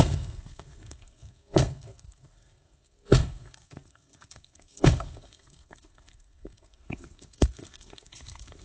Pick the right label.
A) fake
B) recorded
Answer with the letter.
A